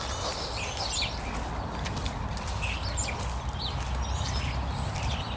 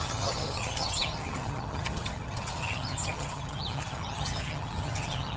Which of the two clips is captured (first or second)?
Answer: first